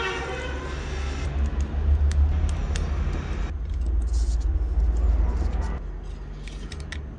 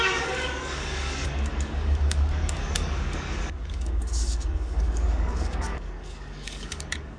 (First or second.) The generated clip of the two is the second